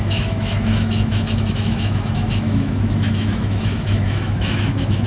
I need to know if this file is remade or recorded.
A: remade